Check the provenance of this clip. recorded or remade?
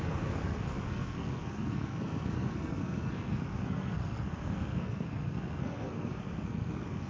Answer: remade